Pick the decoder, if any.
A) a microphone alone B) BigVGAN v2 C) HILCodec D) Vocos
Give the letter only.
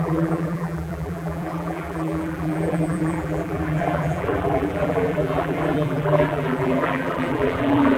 B